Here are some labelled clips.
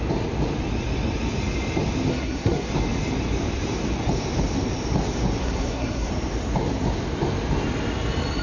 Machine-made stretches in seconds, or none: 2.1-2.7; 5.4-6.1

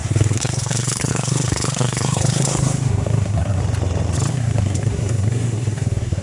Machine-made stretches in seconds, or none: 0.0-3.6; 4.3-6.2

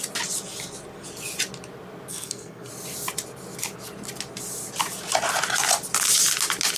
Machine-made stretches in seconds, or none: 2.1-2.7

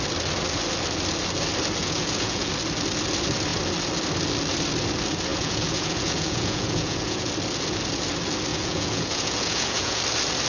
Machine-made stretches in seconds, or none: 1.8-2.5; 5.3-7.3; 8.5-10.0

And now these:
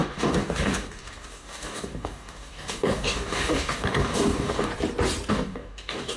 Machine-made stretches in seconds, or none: 0.0-4.7; 5.3-6.2

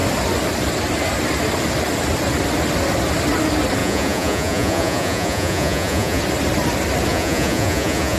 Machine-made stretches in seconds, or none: 3.8-6.2; 7.1-8.2

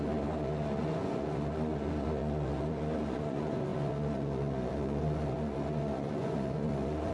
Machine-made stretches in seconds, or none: 0.0-7.1